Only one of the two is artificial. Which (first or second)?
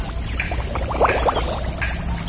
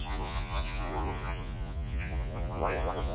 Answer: second